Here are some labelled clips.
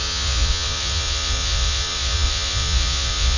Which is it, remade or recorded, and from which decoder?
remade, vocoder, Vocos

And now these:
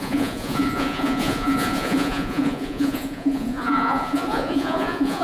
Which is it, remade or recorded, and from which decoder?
remade, vocoder, Vocos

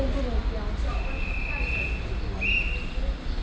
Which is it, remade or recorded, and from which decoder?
recorded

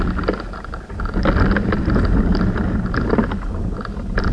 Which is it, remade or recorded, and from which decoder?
recorded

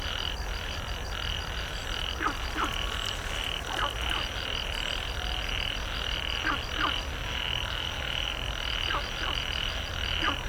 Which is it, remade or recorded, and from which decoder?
recorded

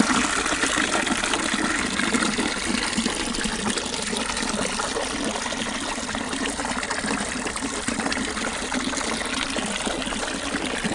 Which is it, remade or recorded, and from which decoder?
recorded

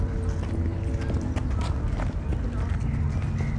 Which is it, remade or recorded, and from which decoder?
recorded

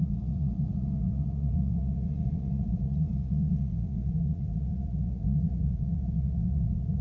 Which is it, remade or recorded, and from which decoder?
remade, vocoder, Vocos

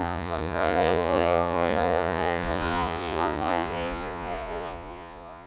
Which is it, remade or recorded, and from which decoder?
remade, vocoder, Vocos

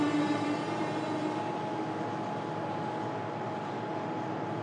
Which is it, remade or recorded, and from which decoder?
recorded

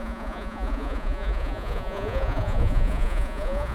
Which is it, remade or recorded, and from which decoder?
remade, vocoder, Vocos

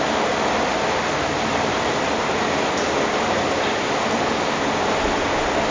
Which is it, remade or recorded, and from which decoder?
recorded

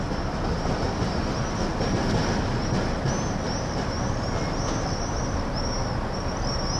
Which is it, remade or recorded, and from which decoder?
recorded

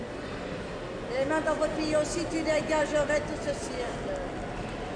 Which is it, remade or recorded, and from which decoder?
recorded